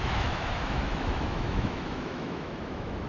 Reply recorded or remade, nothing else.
remade